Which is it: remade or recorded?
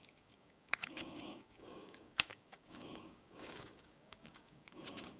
remade